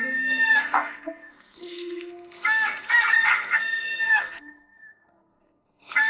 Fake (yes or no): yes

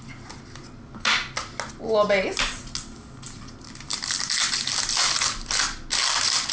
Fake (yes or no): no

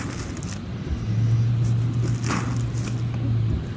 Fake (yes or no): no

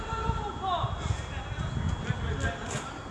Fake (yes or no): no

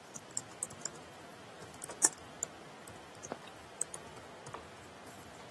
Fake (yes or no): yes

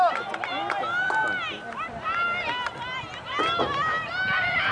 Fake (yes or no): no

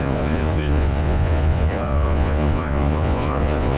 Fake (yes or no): yes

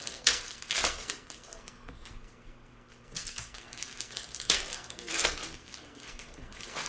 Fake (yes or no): yes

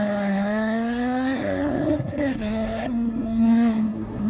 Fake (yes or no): yes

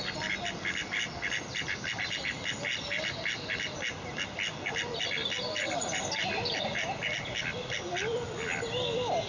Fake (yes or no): no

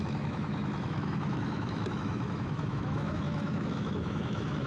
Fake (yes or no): yes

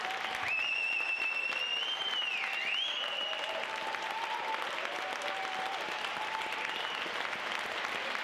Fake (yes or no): no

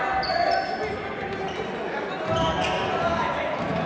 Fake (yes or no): no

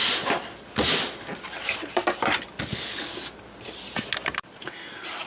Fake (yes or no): no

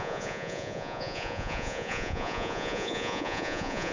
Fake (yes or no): yes